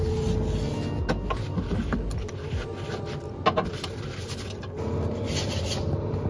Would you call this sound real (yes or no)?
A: yes